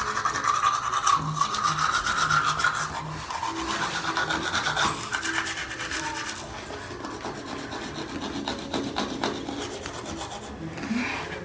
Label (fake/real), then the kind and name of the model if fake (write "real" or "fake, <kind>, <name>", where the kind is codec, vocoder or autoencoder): real